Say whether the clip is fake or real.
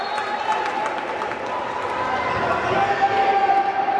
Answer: real